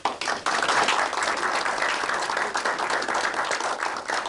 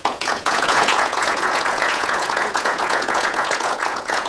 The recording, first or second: first